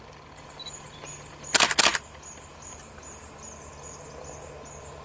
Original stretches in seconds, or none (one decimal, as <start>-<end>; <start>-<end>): 0.0-5.0